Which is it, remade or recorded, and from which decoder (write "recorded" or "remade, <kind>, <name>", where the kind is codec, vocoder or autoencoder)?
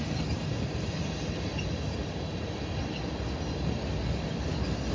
recorded